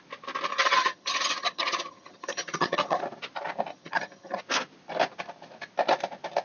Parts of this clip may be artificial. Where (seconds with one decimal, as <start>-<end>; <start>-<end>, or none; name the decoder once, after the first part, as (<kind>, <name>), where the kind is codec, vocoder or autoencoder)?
0.5-3.0 (vocoder, HiFi-GAN); 3.7-4.4